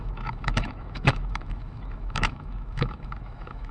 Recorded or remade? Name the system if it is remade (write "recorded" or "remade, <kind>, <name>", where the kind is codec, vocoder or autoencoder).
remade, autoencoder, DAC-VAE